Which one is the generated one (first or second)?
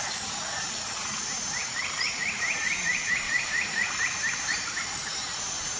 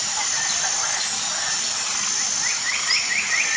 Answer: first